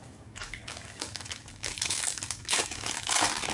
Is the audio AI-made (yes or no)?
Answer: yes